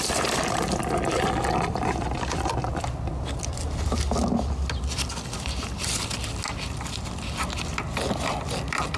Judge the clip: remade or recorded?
recorded